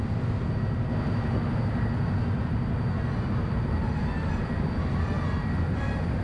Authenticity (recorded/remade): recorded